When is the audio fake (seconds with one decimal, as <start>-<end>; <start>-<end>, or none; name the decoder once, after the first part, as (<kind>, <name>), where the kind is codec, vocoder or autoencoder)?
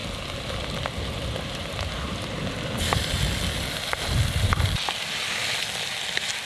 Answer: none